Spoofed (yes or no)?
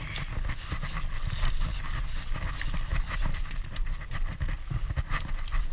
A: no